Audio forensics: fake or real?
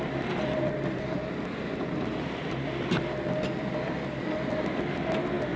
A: real